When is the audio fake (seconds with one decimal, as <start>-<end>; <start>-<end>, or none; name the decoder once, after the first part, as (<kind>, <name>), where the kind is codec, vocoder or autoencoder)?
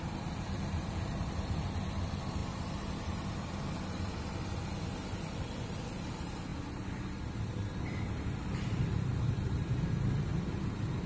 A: 0.0-6.5 (vocoder, BigVGAN v2); 7.2-10.3